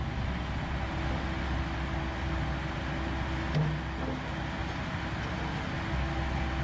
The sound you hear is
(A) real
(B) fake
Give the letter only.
A